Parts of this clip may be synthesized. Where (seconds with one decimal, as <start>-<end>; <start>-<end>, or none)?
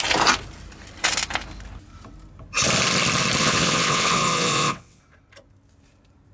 3.4-5.0